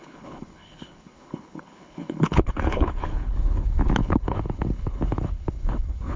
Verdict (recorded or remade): remade